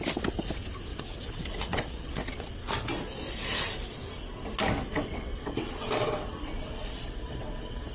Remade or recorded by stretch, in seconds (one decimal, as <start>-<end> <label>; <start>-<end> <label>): 0.0-0.9 recorded; 0.9-2.5 remade; 2.5-4.9 recorded; 4.9-7.9 remade